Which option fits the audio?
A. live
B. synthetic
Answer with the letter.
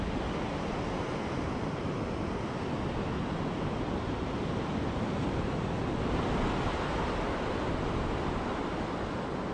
A